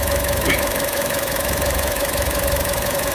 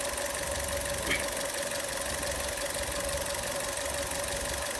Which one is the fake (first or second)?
first